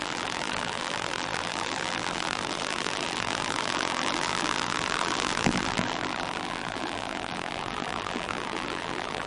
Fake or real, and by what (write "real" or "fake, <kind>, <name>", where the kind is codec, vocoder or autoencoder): fake, vocoder, BigVGAN v2